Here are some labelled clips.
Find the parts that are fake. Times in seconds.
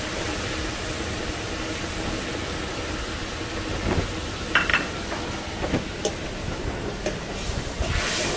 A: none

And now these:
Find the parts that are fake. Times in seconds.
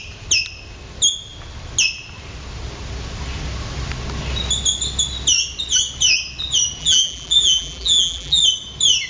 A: 6.8-8.4 (vocoder, BigVGAN v2)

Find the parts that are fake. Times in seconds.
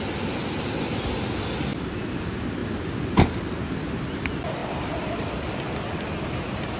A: 2.6-3.4 (vocoder, BigVGAN v2); 4.6-5.5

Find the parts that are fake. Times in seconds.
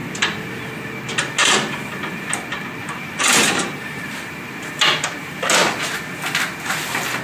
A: 1.4-1.9 (vocoder, BigVGAN v2); 2.8-4.3